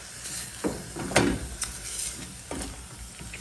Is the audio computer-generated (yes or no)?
no